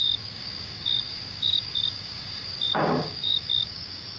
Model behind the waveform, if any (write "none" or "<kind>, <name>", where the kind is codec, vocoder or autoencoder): codec, DAC